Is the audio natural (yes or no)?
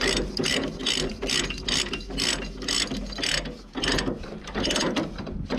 yes